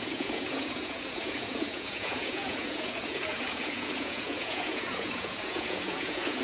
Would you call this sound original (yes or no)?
no